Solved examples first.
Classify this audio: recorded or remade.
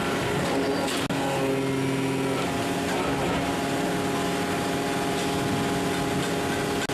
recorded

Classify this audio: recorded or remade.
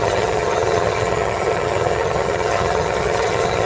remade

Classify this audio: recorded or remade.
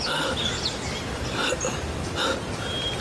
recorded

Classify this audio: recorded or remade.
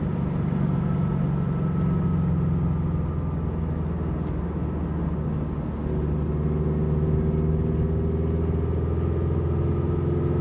recorded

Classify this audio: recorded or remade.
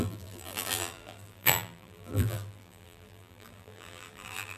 remade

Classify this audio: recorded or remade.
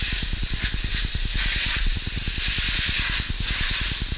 recorded